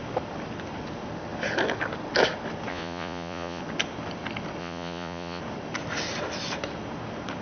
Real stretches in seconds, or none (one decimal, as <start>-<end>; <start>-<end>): 0.0-2.7; 3.6-4.6; 5.4-7.4